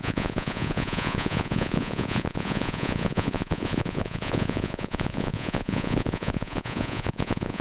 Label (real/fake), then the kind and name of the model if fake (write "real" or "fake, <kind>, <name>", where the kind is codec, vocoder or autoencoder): fake, vocoder, Vocos